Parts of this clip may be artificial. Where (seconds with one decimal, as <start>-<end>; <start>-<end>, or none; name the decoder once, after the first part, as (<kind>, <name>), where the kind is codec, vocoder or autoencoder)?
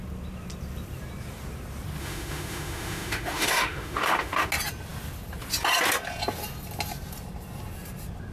2.0-4.5 (autoencoder, DAC-VAE)